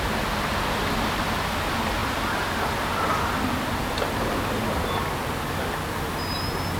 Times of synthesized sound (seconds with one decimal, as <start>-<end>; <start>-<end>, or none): none